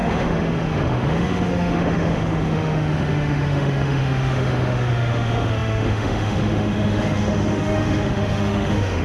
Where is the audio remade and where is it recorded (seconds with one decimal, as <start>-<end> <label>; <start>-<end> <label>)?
0.0-9.0 remade